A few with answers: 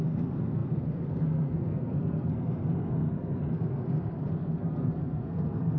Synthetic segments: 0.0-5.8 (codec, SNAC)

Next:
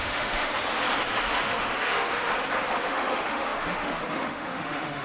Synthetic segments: 0.0-0.5 (autoencoder, DAC-VAE); 1.4-2.3; 2.8-5.0

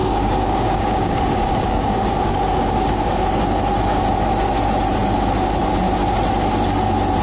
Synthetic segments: 0.0-3.3 (codec, DAC)